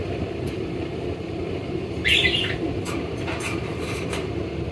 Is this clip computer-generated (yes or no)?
yes